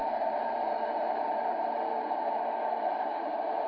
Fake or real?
fake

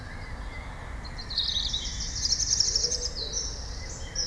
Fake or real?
real